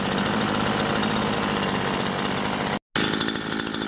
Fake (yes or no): no